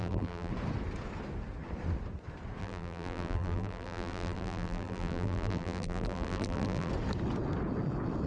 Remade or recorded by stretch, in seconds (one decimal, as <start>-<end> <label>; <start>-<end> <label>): 0.0-0.5 remade; 0.5-2.6 recorded; 2.6-6.9 remade; 6.9-8.3 recorded